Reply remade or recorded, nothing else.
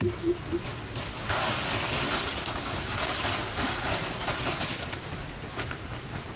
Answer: recorded